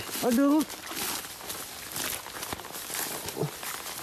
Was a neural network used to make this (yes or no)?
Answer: no